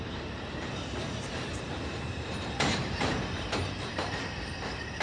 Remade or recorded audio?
remade